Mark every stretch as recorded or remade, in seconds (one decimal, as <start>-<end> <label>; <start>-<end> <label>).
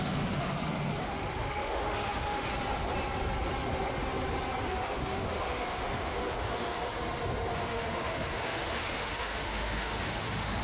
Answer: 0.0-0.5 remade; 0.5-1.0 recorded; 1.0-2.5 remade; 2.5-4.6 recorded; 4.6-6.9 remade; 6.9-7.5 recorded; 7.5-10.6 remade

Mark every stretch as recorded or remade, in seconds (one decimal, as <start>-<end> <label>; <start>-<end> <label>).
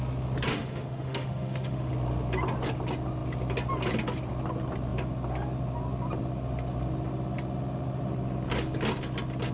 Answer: 0.0-0.5 recorded; 0.5-1.9 remade; 1.9-9.5 recorded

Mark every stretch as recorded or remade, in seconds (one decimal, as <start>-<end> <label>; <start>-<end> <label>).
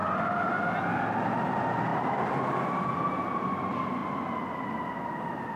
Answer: 0.0-5.6 recorded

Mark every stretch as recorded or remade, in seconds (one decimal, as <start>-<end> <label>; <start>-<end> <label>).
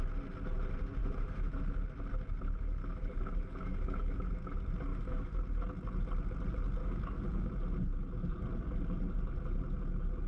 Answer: 0.0-1.0 recorded; 1.0-1.6 remade; 1.6-2.8 recorded; 2.8-4.3 remade; 4.3-4.9 recorded; 4.9-5.4 remade; 5.4-6.8 recorded; 6.8-7.5 remade; 7.5-10.3 recorded